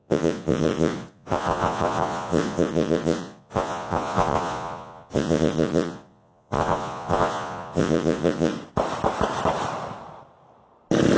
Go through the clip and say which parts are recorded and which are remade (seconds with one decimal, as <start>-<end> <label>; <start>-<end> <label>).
0.0-8.5 remade; 8.5-11.2 recorded